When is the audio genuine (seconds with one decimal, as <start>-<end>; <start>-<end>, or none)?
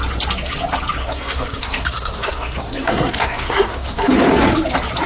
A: 0.0-1.0; 4.1-5.1